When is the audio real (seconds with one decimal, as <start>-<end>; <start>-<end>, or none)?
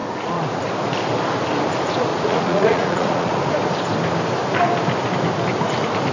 0.6-2.1; 3.4-6.1